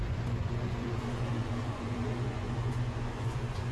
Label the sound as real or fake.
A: fake